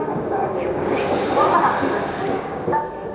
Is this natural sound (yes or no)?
no